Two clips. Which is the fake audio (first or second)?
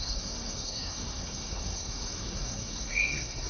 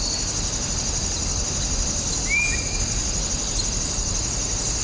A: first